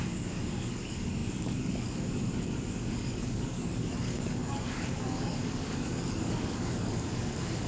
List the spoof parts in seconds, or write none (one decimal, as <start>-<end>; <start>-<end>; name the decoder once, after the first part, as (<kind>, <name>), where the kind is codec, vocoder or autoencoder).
0.0-7.7 (codec, DAC)